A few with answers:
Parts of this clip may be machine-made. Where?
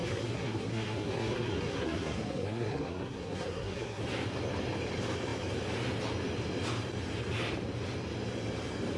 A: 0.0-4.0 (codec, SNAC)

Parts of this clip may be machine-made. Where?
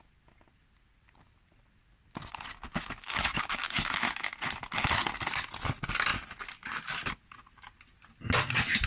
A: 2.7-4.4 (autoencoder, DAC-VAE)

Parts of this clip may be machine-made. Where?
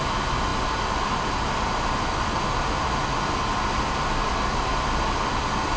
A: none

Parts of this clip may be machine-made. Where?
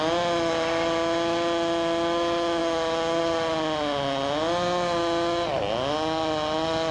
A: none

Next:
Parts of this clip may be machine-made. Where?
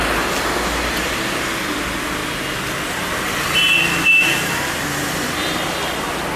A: none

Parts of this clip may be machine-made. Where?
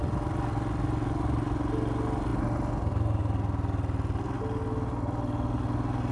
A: none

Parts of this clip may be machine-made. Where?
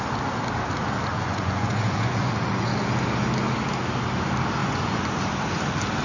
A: 1.1-2.7 (vocoder, Vocos); 4.6-5.2